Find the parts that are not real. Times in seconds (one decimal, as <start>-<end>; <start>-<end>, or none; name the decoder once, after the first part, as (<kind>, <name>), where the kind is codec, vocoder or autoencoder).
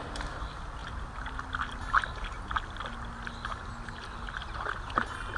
none